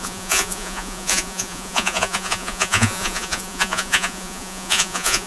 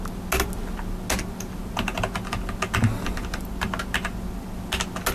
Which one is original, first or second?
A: second